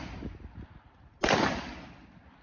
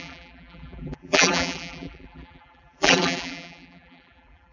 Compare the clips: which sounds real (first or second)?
first